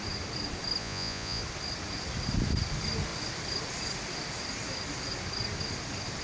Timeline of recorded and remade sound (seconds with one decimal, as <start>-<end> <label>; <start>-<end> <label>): 0.0-0.8 recorded; 0.8-1.4 remade; 1.4-6.2 recorded